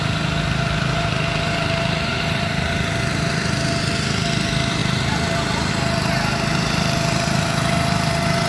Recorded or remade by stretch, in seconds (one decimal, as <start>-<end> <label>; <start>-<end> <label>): 0.0-2.1 recorded; 2.1-2.7 remade; 2.7-4.8 recorded; 4.8-5.7 remade; 5.7-8.5 recorded